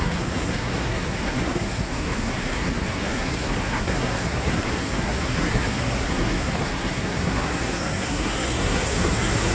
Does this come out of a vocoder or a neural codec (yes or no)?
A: yes